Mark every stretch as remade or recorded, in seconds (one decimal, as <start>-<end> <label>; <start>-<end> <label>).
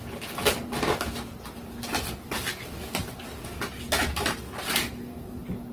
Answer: 0.0-5.7 recorded